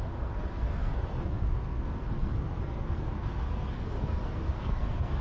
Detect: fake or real fake